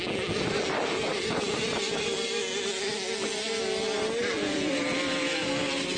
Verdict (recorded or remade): recorded